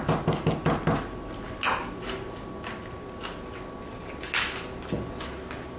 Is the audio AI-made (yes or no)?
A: no